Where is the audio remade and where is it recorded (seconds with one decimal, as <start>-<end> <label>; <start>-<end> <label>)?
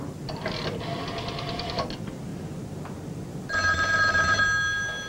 0.0-5.1 recorded